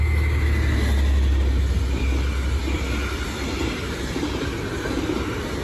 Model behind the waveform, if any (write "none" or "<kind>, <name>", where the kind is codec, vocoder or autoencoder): none